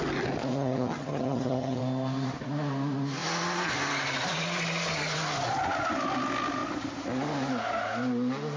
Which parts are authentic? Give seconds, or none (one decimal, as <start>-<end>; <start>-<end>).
0.0-0.5; 1.8-8.6